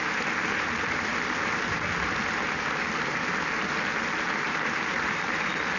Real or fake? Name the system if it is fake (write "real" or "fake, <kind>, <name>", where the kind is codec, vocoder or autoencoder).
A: real